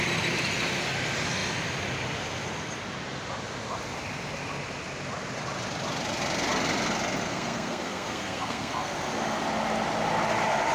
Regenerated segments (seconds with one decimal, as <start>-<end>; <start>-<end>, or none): 7.3-8.9